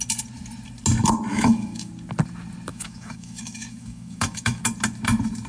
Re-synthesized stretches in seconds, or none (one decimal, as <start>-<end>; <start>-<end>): 1.3-1.9; 2.7-4.6